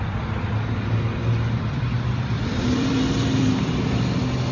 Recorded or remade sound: remade